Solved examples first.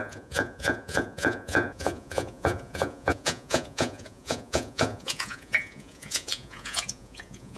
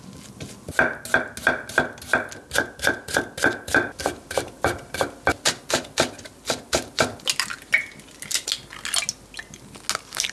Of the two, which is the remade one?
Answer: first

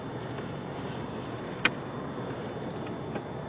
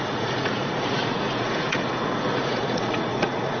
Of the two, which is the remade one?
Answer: second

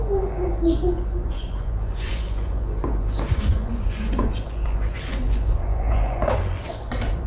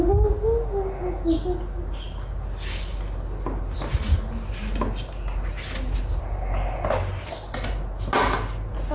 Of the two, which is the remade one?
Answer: first